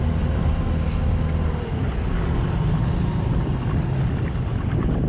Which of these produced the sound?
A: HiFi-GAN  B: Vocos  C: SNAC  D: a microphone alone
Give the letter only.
D